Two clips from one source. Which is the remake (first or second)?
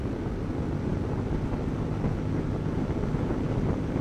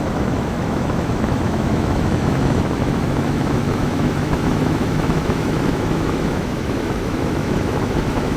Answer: second